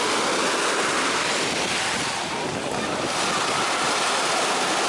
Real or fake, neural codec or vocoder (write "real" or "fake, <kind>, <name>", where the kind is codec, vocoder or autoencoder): real